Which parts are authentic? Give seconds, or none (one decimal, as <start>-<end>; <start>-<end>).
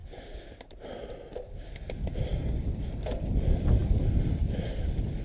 0.0-5.2